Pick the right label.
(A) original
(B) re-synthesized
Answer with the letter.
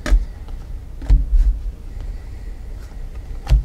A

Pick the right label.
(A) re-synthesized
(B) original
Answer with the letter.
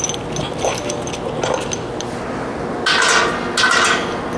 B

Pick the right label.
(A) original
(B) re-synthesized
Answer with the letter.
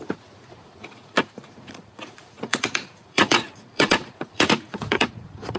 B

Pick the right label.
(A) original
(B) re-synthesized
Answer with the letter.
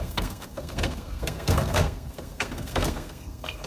B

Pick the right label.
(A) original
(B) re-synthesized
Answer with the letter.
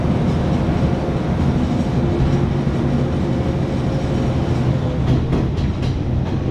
A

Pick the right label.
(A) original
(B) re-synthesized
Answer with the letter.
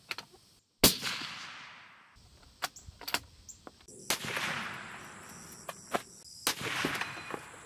A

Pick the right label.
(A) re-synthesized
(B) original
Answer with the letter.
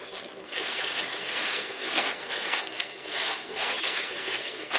A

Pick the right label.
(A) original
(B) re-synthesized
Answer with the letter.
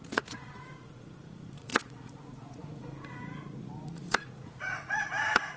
B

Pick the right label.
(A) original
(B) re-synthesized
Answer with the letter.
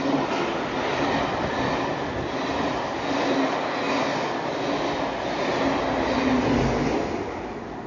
A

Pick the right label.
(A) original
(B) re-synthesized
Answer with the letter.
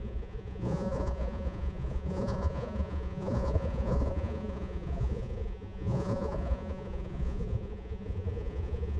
B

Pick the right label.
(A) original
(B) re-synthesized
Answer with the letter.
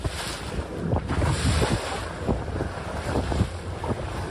A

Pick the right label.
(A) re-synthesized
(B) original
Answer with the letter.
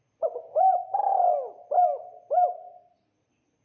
B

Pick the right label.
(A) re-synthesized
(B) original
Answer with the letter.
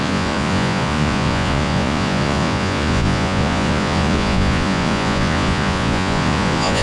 A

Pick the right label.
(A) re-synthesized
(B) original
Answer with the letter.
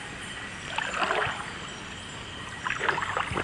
B